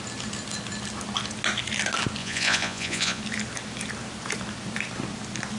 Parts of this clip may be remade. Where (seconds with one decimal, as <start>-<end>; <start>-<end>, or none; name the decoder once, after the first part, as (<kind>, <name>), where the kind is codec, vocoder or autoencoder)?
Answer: 2.2-3.2 (vocoder, Vocos)